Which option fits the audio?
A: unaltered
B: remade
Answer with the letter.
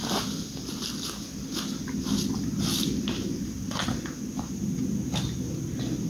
A